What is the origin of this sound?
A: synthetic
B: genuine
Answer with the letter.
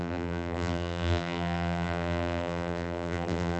A